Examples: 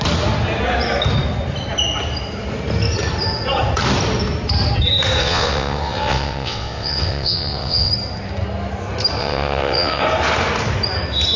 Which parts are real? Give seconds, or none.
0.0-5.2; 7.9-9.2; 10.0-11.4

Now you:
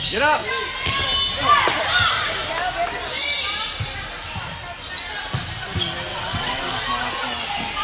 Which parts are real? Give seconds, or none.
0.0-6.1; 6.8-7.8

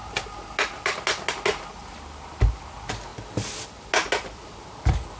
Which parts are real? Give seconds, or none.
0.0-5.2

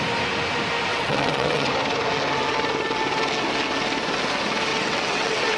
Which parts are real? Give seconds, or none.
0.0-0.9; 1.7-4.7

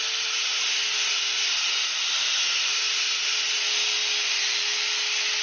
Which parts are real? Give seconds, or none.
0.0-5.4

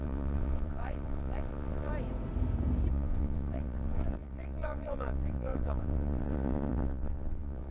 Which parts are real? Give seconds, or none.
1.9-2.9

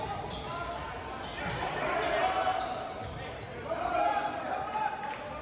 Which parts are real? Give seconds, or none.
0.0-5.4

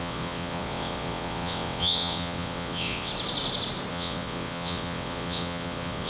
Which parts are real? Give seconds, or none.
3.1-3.9